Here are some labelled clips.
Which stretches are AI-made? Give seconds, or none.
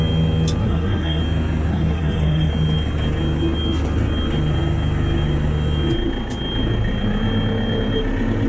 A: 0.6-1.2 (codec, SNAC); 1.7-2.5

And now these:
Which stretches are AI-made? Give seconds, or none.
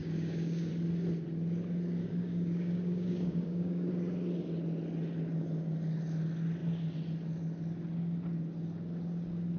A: 0.0-0.7 (codec, DAC); 2.0-3.9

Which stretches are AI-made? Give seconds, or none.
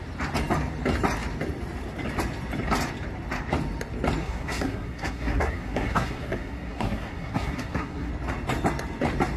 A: 4.2-8.1 (codec, SNAC)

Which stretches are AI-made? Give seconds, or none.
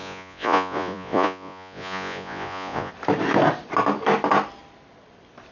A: 0.0-2.9 (vocoder, Vocos)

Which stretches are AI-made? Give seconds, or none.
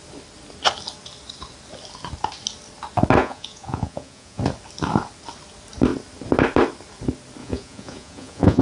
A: 3.2-4.4 (vocoder, Vocos); 7.4-8.6